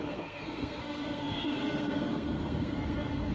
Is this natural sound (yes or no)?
no